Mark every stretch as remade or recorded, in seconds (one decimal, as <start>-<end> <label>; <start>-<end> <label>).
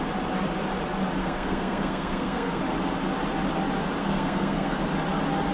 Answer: 0.0-1.2 recorded; 1.2-2.6 remade; 2.6-4.0 recorded; 4.0-4.8 remade; 4.8-5.5 recorded